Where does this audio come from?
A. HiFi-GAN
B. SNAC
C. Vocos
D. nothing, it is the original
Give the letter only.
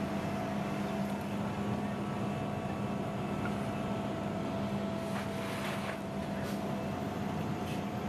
D